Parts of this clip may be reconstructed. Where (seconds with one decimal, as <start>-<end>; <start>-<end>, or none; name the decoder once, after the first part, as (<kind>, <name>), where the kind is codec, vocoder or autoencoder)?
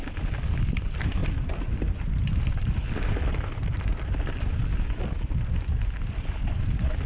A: 1.2-2.2 (vocoder, BigVGAN v2); 3.9-6.6